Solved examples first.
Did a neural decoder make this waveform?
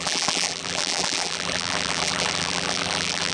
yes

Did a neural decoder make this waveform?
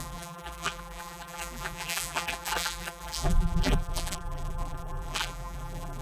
yes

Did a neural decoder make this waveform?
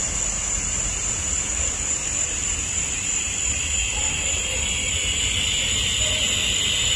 yes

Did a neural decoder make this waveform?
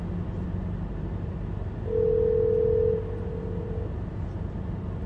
no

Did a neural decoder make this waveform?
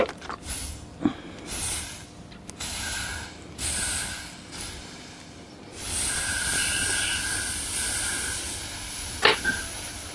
no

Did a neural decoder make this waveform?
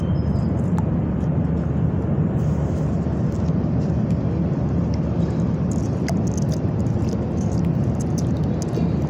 no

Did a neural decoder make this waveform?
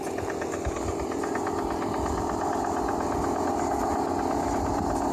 no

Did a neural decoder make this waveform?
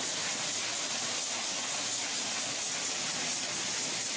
no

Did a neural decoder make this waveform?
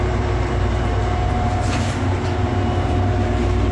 yes